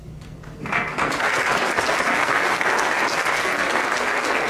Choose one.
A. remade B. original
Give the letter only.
A